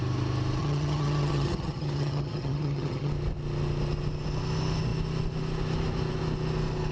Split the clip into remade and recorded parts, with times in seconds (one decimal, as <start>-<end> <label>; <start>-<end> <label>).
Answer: 0.0-0.6 recorded; 0.6-3.1 remade; 3.1-6.9 recorded